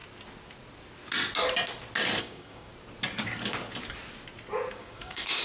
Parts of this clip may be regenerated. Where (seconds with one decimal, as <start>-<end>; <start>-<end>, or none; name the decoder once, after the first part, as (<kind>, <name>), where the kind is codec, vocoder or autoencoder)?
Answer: 2.2-2.7 (codec, DAC); 4.7-5.4